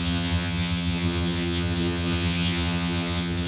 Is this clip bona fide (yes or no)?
no